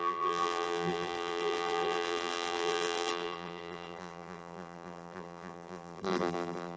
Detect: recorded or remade remade